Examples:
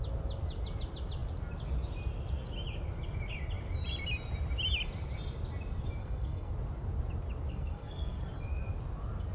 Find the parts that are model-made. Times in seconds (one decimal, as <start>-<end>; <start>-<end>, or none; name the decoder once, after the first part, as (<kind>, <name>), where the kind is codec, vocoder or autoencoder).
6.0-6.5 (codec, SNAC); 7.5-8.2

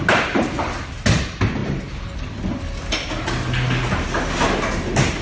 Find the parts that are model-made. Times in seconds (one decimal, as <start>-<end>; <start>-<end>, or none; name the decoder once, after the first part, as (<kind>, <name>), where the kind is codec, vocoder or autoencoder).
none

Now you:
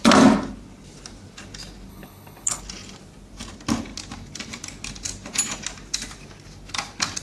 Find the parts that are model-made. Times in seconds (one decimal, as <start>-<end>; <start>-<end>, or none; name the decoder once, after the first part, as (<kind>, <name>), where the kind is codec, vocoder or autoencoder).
1.9-2.6 (codec, HILCodec)

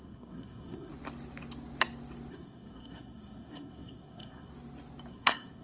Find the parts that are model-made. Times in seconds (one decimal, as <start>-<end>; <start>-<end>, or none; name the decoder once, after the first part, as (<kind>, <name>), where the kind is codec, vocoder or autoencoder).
0.0-0.9 (codec, SNAC); 2.3-4.5; 5.1-5.6

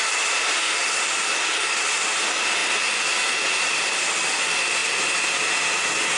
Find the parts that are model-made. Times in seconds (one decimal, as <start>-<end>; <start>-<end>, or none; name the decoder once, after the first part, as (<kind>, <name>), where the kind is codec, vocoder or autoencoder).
none

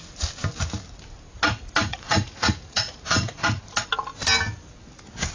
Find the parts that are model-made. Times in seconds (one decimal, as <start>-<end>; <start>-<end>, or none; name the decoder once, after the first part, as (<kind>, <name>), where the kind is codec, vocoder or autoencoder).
1.9-3.6 (vocoder, Vocos)